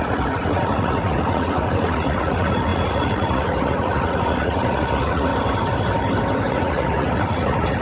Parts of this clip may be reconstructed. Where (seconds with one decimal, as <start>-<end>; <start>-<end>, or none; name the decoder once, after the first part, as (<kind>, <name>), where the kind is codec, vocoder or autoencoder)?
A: 0.0-5.3 (vocoder, Vocos); 6.5-7.8